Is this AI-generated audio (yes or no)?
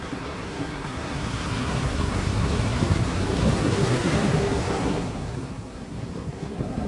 yes